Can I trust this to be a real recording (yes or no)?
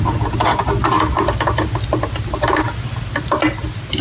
yes